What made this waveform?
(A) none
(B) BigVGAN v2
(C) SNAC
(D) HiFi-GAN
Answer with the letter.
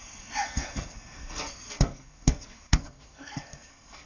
C